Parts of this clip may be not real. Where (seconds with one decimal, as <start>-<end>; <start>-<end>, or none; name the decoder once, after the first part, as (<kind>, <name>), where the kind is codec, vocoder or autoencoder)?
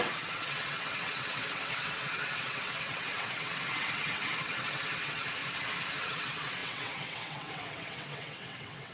0.0-5.4 (vocoder, WaveNeXt); 6.0-8.9